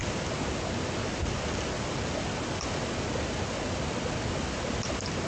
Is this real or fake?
real